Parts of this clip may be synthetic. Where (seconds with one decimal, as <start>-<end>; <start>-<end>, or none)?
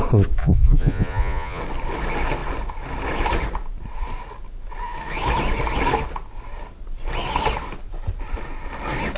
0.4-1.6